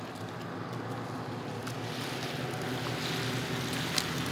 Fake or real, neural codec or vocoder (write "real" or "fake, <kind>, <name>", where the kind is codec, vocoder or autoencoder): real